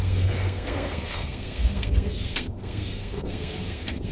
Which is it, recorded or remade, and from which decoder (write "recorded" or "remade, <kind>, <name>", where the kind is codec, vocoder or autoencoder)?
remade, codec, SNAC